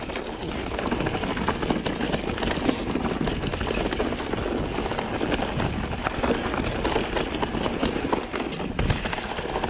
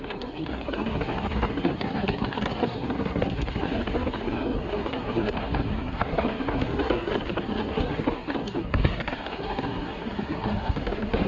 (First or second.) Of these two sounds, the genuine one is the first